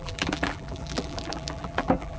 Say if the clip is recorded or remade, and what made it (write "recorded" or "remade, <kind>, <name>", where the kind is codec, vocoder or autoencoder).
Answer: remade, vocoder, BigVGAN v2